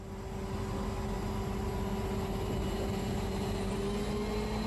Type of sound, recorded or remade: recorded